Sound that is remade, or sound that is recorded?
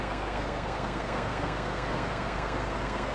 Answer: remade